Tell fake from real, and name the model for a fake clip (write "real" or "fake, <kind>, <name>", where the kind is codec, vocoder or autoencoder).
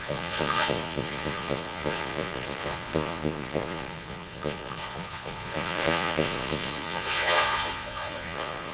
fake, vocoder, Vocos